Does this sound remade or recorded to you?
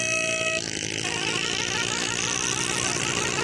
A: recorded